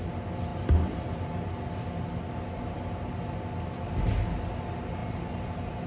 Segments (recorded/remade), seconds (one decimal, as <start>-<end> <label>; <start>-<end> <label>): 0.0-5.9 recorded